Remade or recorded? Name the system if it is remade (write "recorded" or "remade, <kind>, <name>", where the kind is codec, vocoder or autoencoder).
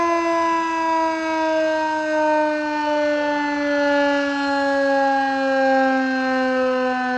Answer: recorded